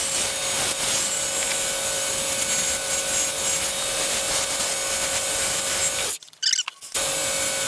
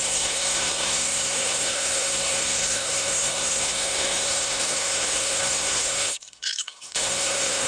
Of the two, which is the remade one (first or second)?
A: second